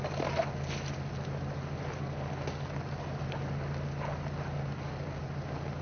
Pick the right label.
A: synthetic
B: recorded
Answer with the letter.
B